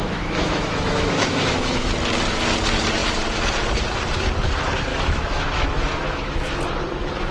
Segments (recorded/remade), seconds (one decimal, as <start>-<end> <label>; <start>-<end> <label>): 0.0-1.9 remade; 1.9-4.9 recorded; 4.9-6.6 remade; 6.6-7.3 recorded